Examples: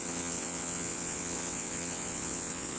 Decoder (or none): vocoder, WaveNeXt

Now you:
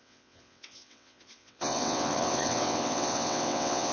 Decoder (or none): vocoder, WaveNeXt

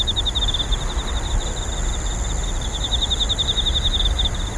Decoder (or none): none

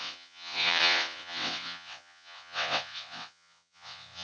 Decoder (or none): vocoder, WaveNeXt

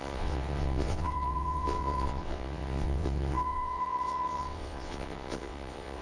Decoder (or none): vocoder, WaveNeXt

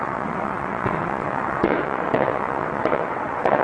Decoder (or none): vocoder, WaveNeXt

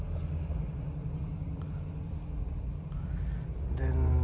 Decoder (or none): none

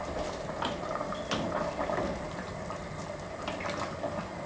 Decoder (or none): none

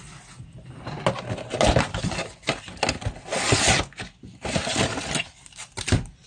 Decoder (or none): none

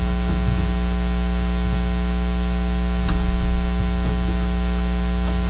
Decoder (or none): none